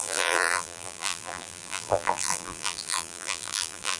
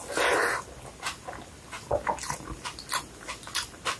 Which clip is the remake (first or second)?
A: first